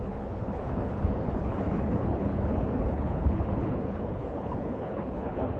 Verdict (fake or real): fake